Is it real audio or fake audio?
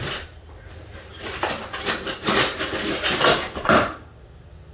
real